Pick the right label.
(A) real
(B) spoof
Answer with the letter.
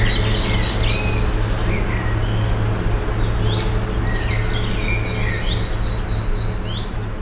A